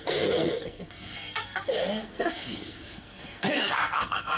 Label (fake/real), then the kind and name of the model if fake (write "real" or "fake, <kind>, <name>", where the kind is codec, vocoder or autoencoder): fake, codec, SNAC